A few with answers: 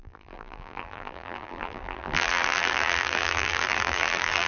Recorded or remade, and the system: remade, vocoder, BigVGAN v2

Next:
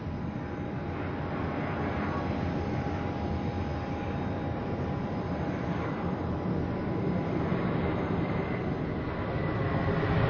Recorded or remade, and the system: recorded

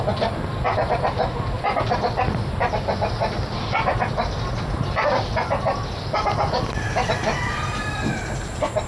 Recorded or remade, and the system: recorded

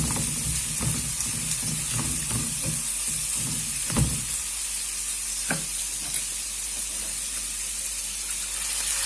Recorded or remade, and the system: recorded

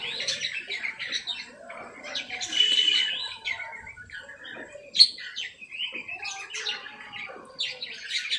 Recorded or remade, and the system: recorded